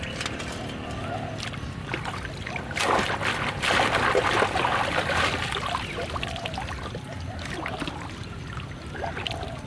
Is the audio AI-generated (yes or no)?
no